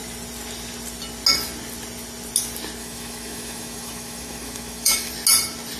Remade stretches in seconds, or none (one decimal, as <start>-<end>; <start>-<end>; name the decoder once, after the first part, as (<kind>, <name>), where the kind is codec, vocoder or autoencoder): 2.8-5.1 (autoencoder, DAC-VAE)